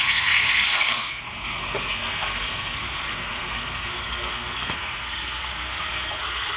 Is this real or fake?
fake